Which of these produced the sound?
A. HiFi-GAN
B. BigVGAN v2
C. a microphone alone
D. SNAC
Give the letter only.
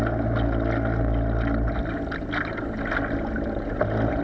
C